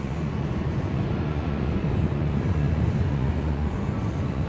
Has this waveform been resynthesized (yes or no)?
yes